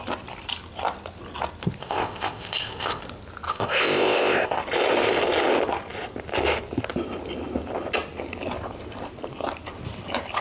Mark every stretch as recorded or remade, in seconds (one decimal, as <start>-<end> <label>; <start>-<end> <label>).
0.0-1.8 recorded; 1.8-3.0 remade; 3.0-3.5 recorded; 3.5-4.6 remade; 4.6-10.4 recorded